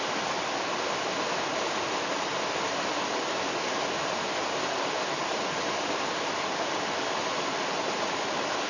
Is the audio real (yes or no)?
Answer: yes